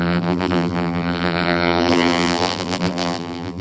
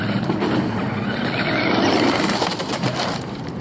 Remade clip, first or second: first